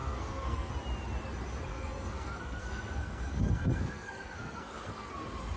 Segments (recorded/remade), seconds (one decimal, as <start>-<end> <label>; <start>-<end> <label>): 0.0-0.7 remade; 0.7-1.7 recorded; 1.7-5.1 remade; 5.1-5.6 recorded